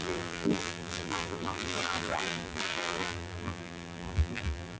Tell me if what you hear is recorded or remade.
remade